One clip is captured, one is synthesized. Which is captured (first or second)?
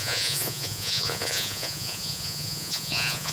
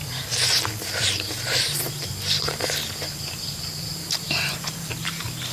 second